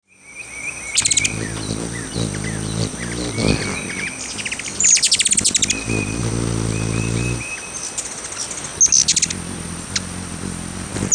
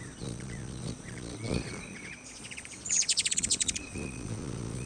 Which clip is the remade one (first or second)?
second